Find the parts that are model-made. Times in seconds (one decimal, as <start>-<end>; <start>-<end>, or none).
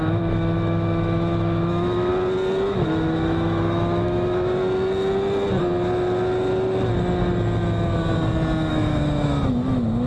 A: 0.0-2.1; 2.7-4.6; 8.7-10.1